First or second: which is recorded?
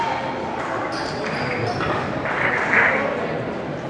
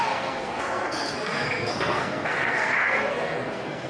first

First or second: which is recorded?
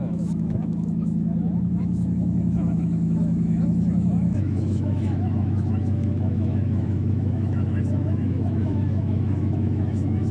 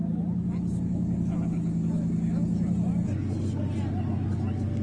second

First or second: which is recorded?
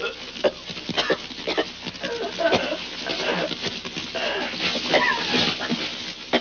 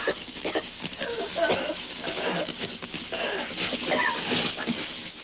first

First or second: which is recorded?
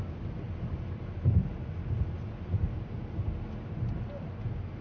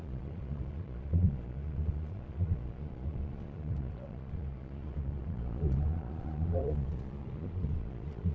first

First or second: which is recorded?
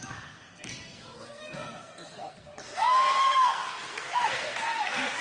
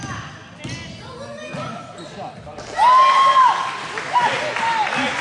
second